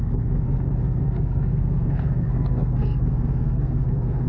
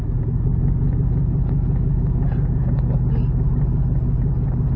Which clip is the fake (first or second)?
first